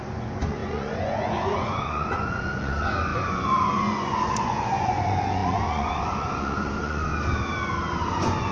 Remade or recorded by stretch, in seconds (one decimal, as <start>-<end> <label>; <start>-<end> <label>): 0.0-7.1 remade; 7.1-8.1 recorded; 8.1-8.5 remade